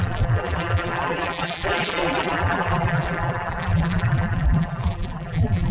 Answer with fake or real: fake